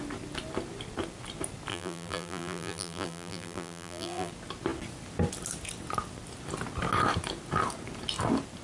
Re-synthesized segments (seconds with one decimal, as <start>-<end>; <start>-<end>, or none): 1.7-4.3

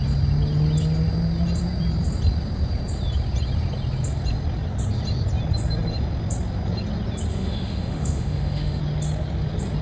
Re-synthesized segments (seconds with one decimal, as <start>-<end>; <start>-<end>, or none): 7.3-8.8

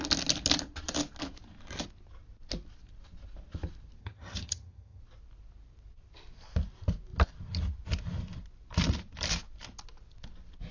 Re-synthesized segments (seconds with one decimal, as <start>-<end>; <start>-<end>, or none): 4.0-5.0

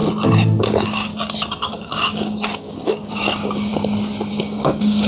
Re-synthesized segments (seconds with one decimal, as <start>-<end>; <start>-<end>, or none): 0.6-1.1; 1.7-3.7; 4.3-5.1

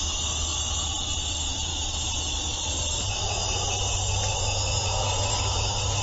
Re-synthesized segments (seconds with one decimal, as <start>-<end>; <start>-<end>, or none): none

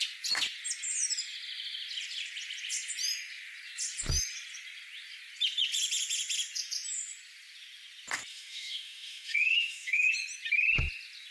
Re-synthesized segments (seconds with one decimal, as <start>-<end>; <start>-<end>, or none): 8.3-10.1

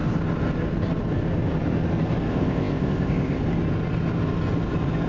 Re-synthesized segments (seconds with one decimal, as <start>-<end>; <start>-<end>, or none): 2.3-3.4